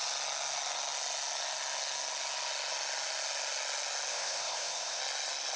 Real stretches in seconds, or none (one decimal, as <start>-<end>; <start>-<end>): 0.0-4.1; 5.0-5.6